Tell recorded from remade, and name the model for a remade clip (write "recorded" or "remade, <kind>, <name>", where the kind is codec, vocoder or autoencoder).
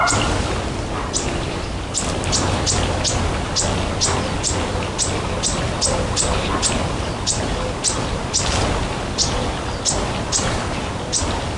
recorded